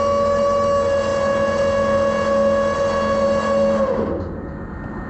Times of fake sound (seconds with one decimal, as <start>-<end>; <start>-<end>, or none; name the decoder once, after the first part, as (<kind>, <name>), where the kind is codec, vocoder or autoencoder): none

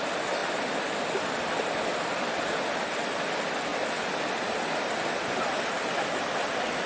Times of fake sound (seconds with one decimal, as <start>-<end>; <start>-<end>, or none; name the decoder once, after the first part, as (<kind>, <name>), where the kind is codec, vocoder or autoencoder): none

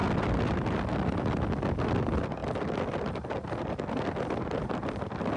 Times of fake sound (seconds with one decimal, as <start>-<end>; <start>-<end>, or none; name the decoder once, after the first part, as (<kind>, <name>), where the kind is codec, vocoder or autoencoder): 2.4-5.0 (vocoder, BigVGAN v2)

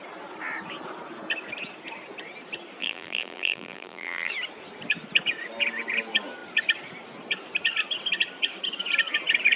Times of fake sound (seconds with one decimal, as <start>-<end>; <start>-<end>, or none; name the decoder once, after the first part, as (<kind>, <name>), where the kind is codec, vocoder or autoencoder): 2.8-4.3 (vocoder, BigVGAN v2)

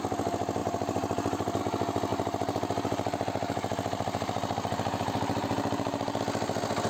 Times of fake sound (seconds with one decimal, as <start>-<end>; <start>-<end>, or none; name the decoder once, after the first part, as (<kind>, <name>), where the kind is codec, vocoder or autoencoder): 0.6-1.6 (vocoder, BigVGAN v2); 2.1-6.2

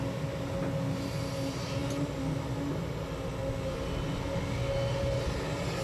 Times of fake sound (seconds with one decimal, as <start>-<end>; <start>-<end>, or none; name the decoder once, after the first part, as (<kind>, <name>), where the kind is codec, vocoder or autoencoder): none